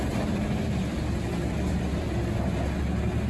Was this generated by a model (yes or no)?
no